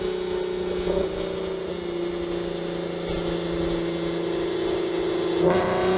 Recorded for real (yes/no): yes